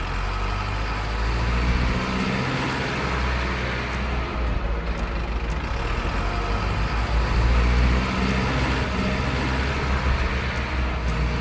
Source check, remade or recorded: recorded